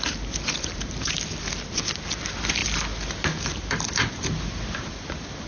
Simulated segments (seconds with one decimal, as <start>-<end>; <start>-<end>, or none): none

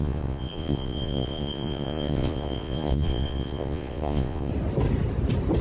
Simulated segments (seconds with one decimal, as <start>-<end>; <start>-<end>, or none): 0.0-4.5

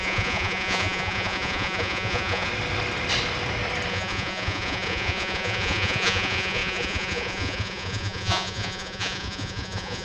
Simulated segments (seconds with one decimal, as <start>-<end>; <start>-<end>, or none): 0.0-2.5; 3.9-10.0

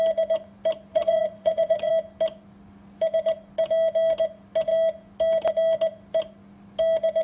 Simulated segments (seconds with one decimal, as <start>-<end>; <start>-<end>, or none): 0.9-1.9

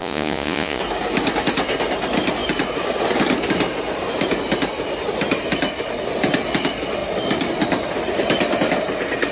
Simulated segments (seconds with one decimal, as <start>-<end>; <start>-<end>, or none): 0.0-0.8

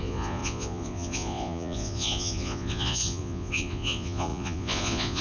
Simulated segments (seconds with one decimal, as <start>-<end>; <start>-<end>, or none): 0.0-5.2

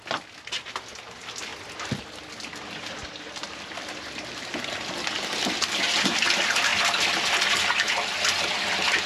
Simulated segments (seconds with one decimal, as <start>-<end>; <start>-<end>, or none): none